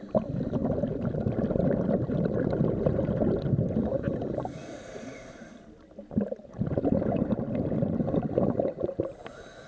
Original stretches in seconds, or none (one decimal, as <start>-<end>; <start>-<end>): 0.0-9.7